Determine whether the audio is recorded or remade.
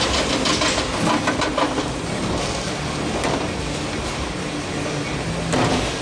recorded